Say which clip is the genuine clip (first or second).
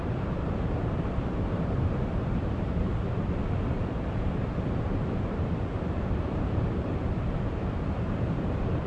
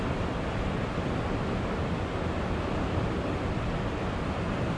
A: second